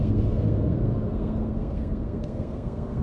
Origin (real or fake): fake